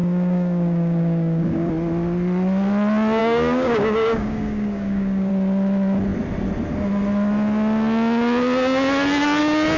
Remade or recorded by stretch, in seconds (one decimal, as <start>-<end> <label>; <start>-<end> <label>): 0.0-1.7 remade; 1.7-3.2 recorded; 3.2-5.3 remade; 5.3-9.8 recorded